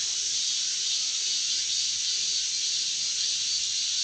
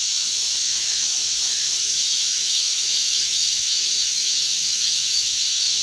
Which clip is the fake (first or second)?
second